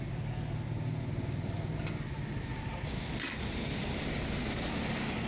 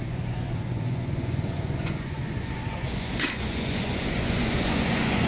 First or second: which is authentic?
first